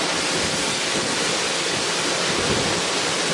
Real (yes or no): yes